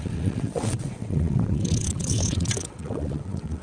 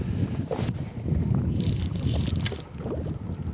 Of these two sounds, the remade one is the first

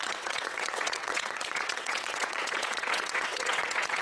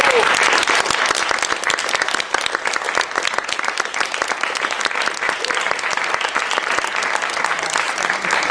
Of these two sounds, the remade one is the first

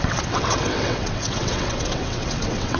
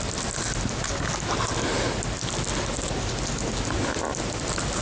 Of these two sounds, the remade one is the first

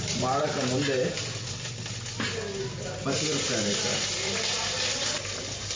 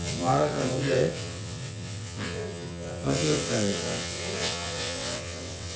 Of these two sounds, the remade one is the second